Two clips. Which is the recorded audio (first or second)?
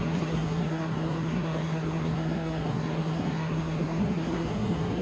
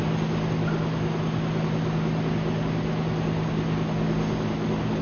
second